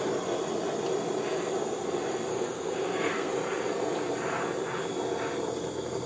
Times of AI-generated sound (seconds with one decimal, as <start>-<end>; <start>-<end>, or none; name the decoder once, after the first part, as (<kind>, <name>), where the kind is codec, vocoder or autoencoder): 2.3-3.3 (codec, SNAC)

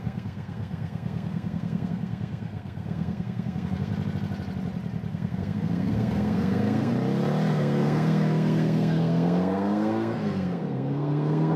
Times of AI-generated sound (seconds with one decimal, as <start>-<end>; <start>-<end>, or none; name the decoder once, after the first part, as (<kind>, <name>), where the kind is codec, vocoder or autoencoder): 0.0-3.9 (codec, SNAC); 5.1-6.9; 7.5-11.6